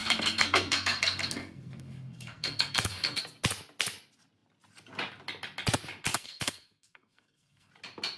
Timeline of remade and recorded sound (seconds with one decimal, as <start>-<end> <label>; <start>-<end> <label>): 0.0-3.2 remade; 3.2-6.1 recorded; 6.1-7.7 remade; 7.7-8.2 recorded